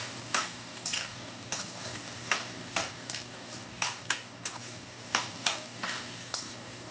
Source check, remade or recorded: remade